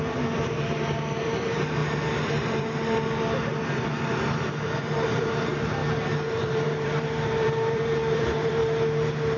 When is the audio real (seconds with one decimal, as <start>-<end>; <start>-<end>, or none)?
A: 5.8-6.4; 8.6-9.4